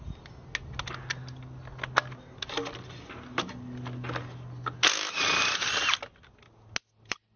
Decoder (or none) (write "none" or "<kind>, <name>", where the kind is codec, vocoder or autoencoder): none